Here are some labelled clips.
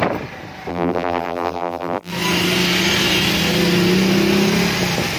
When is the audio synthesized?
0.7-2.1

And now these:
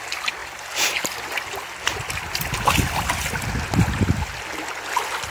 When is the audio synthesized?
none

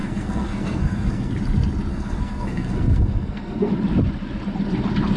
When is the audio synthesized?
0.0-1.3; 1.9-3.7